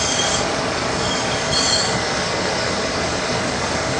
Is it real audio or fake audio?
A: fake